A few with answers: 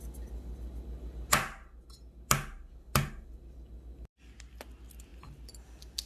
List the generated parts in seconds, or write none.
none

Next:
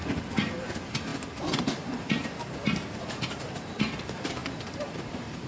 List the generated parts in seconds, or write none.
0.0-5.5

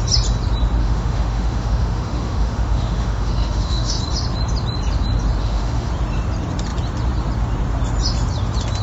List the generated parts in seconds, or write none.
0.8-4.0; 5.4-5.9

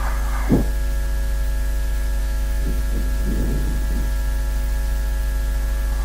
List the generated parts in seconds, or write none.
2.2-2.8

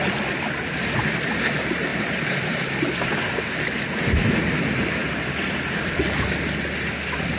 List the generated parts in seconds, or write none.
1.9-3.3; 5.0-6.0

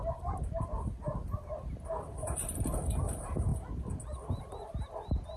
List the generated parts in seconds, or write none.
none

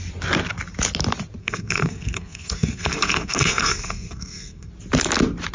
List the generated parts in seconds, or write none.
1.4-4.7

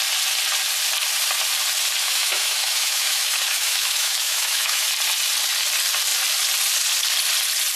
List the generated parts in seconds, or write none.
2.0-4.9